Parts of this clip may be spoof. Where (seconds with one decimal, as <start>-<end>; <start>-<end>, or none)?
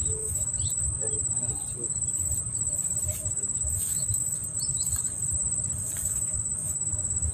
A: 0.0-0.5; 3.2-4.4; 6.1-7.3